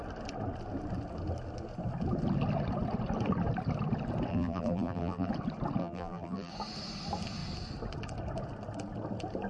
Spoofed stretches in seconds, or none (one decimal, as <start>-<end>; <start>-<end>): 4.3-5.3; 5.8-6.5